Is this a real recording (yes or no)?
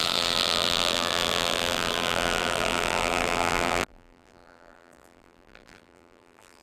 no